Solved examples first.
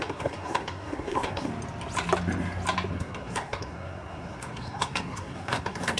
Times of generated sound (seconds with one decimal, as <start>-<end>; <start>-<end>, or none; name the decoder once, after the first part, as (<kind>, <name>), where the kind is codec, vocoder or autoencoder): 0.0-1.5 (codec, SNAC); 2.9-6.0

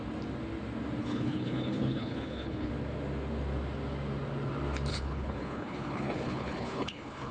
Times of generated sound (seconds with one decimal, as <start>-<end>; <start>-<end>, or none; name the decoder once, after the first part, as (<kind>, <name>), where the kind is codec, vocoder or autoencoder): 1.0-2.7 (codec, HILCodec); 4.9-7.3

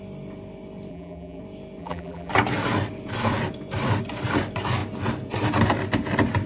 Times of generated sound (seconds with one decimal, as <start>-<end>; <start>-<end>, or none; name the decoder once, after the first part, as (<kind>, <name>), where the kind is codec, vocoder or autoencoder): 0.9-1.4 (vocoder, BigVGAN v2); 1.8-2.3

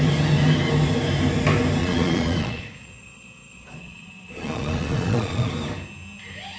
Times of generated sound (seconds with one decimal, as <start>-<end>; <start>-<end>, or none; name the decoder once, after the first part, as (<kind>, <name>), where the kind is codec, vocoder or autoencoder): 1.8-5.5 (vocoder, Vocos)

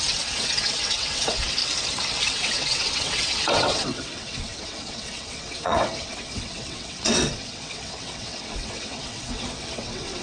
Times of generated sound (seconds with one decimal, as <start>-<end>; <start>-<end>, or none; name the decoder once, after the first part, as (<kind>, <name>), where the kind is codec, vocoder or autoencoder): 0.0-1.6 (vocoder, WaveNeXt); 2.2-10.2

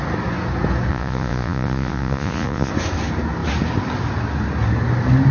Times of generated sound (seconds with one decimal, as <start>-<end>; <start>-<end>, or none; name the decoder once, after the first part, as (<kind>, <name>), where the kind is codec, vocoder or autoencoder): 0.9-2.7 (vocoder, Vocos)